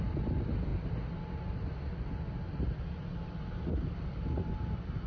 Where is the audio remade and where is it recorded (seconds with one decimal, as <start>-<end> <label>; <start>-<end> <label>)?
0.0-5.1 recorded